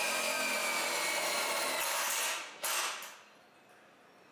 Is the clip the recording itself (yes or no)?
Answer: yes